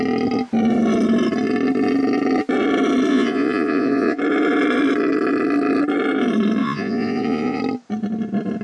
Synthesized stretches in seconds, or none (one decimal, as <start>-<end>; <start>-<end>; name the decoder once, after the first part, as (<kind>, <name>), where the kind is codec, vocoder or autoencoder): 3.1-4.2 (vocoder, Vocos); 6.6-7.6